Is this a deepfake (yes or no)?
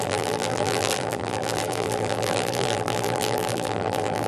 yes